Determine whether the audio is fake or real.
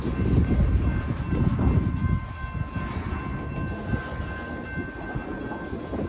real